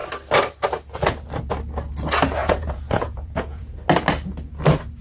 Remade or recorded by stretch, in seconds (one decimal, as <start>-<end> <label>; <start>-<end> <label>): 0.0-2.4 recorded; 2.4-3.7 remade; 3.7-5.0 recorded